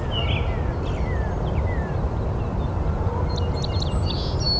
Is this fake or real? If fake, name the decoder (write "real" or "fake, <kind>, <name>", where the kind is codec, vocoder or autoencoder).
real